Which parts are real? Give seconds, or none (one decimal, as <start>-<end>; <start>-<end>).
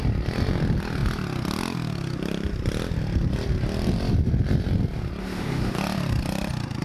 0.0-5.2; 5.8-6.8